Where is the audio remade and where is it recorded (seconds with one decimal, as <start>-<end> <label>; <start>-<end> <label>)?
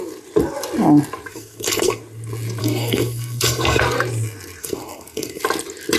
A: 0.0-1.3 recorded; 1.3-2.0 remade; 2.0-2.6 recorded; 2.6-3.8 remade; 3.8-4.6 recorded; 4.6-5.4 remade; 5.4-6.0 recorded